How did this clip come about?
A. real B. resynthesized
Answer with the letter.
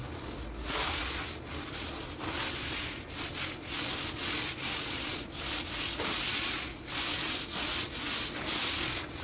A